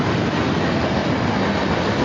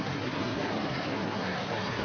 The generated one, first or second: second